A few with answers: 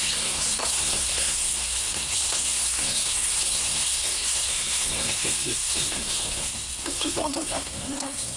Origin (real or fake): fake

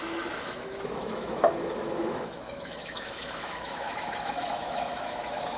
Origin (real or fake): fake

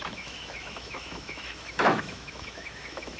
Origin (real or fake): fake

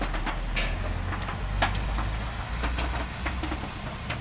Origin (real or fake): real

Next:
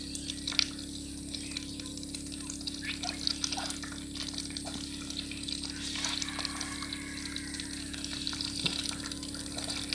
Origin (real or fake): real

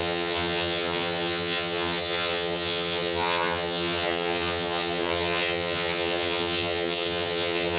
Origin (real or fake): fake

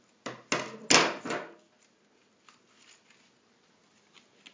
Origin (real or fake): real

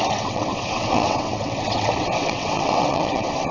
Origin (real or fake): fake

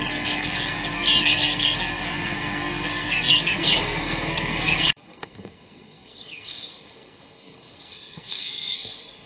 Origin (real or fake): fake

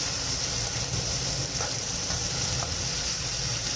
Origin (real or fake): real